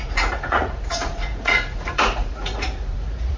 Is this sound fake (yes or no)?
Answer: yes